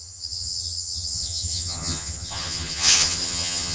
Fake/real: fake